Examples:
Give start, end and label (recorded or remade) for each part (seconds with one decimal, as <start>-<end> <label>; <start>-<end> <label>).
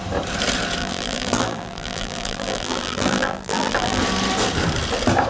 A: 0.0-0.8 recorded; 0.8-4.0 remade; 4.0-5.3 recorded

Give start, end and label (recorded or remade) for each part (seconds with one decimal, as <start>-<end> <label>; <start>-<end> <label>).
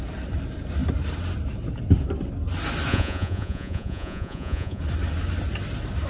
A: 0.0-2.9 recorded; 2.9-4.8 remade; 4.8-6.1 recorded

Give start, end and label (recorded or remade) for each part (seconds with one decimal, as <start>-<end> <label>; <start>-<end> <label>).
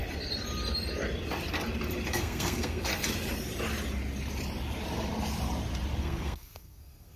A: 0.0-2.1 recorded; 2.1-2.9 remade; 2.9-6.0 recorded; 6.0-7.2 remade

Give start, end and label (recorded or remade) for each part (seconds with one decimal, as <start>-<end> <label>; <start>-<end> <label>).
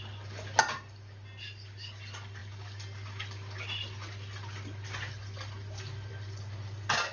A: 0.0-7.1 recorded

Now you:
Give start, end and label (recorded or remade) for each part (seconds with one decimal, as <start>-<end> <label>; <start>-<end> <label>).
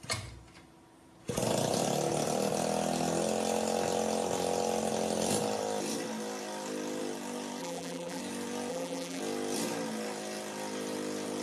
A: 0.0-7.6 recorded; 7.6-8.2 remade; 8.2-8.7 recorded; 8.7-9.2 remade; 9.2-11.4 recorded